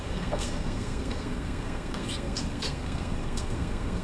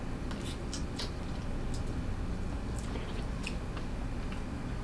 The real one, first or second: second